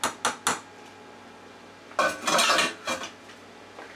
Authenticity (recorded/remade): recorded